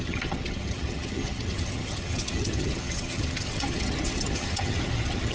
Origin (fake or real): fake